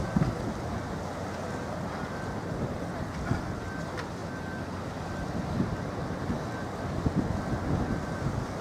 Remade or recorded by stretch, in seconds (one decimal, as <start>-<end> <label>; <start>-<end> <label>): 0.0-8.6 recorded